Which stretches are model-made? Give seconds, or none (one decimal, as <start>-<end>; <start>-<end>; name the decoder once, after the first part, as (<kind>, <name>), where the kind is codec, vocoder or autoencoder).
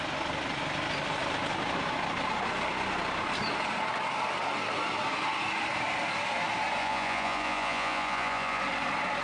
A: 6.8-8.6 (vocoder, Vocos)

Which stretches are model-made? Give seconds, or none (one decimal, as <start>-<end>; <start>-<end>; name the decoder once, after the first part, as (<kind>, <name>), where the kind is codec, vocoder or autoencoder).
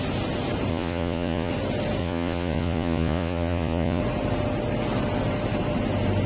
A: 0.7-1.5 (vocoder, Vocos); 2.0-4.0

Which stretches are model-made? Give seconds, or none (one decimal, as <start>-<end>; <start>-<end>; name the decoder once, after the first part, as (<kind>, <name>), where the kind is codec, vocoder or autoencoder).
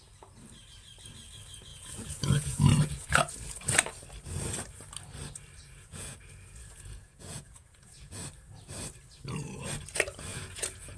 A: 1.7-3.3 (vocoder, Vocos); 5.6-8.2; 10.3-11.0